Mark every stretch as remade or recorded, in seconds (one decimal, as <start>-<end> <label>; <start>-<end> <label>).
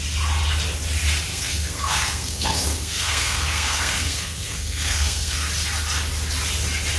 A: 0.0-1.3 recorded; 1.3-5.5 remade; 5.5-7.0 recorded